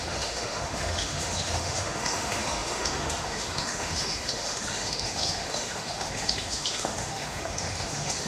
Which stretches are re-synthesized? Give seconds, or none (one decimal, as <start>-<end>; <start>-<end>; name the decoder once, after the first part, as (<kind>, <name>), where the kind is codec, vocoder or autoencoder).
0.0-8.3 (autoencoder, DAC-VAE)